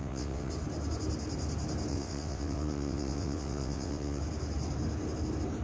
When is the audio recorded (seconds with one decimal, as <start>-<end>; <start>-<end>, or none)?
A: 0.5-1.9; 4.2-5.6